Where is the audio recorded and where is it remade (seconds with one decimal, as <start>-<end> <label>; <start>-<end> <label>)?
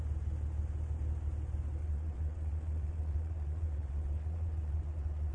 0.0-1.8 recorded; 1.8-5.3 remade